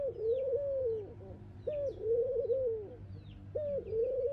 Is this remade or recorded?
recorded